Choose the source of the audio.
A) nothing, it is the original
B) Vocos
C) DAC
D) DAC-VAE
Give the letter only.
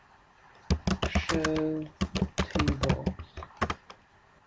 A